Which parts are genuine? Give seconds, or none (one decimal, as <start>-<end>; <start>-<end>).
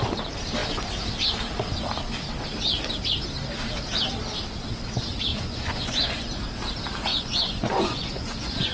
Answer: 0.0-5.3; 6.4-7.1